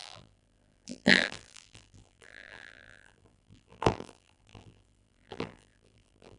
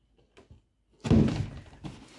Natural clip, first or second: second